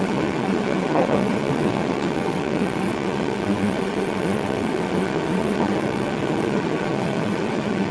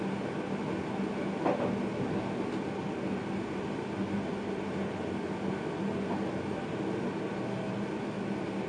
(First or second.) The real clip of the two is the second